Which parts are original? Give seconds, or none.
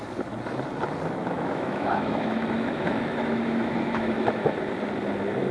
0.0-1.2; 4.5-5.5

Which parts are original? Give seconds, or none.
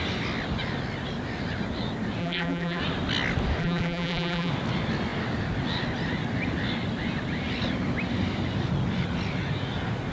0.0-2.2; 2.8-3.6; 4.5-10.1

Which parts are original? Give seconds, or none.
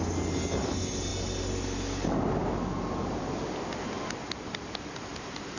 0.0-5.1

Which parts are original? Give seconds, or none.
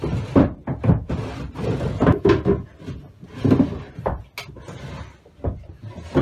0.0-6.2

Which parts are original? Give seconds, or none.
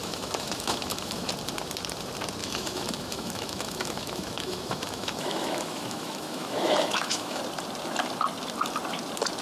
1.3-2.4; 7.4-9.4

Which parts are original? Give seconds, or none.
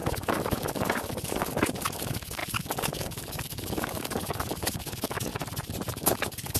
5.3-5.9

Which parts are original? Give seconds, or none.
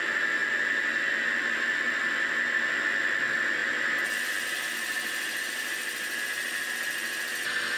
0.0-3.6; 6.7-7.8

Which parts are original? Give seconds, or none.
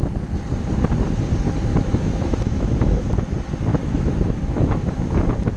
0.0-1.7; 3.1-3.7; 5.1-5.6